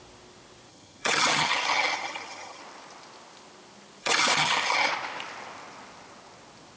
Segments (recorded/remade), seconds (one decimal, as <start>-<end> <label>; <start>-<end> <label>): 0.0-0.7 recorded; 0.7-2.6 remade; 2.6-4.0 recorded; 4.0-4.9 remade; 4.9-6.8 recorded